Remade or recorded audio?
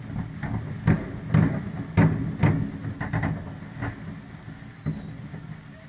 recorded